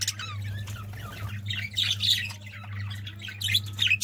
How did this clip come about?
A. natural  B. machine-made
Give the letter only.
A